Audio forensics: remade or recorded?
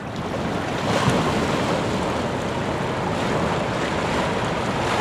recorded